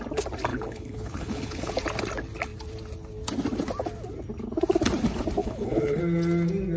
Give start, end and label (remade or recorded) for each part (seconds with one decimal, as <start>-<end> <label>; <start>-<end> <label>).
0.0-0.5 recorded; 0.5-1.7 remade; 1.7-5.4 recorded; 5.4-6.0 remade; 6.0-6.8 recorded